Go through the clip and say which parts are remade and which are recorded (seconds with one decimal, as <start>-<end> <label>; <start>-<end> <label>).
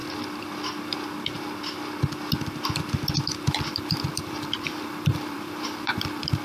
0.0-3.7 recorded; 3.7-6.4 remade